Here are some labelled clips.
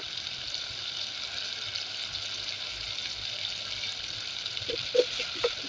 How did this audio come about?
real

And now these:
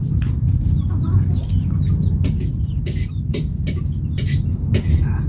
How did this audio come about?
real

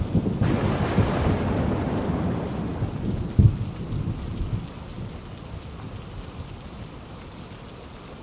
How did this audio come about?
real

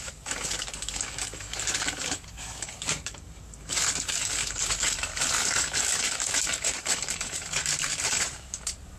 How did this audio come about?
fake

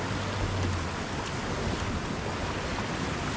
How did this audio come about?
real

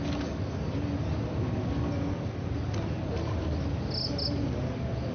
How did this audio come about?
real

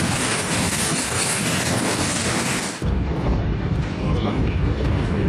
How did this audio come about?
fake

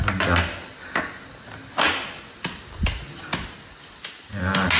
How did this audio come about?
real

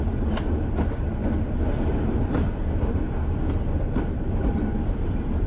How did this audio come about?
real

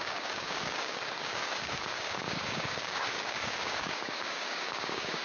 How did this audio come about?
fake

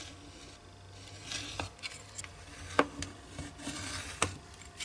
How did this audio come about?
real